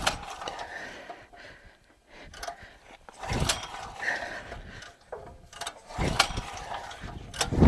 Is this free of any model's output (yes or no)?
yes